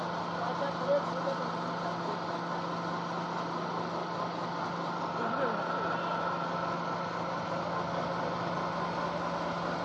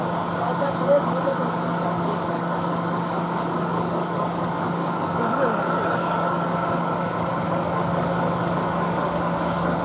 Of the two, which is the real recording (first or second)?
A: first